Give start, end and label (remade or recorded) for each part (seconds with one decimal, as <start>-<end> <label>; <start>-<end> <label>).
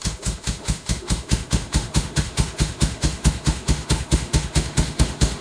0.0-5.4 remade